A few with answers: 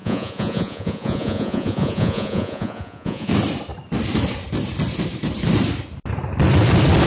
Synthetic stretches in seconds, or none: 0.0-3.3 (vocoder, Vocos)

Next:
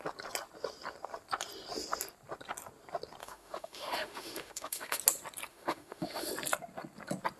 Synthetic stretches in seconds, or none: 3.2-5.0 (autoencoder, DAC-VAE); 5.5-6.3

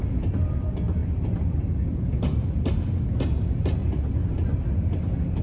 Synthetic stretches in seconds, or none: none

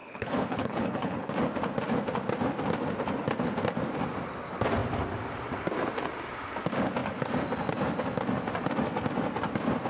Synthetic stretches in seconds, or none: 0.0-1.3 (codec, HILCodec)